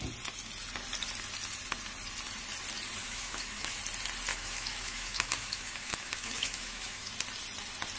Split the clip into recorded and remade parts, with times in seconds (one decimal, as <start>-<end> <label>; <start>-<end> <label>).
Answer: 0.0-3.0 recorded; 3.0-3.8 remade; 3.8-4.3 recorded; 4.3-7.1 remade; 7.1-8.0 recorded